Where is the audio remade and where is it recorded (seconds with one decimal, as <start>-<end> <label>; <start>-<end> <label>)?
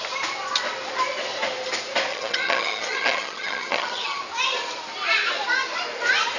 0.0-2.1 recorded; 2.1-4.2 remade; 4.2-6.4 recorded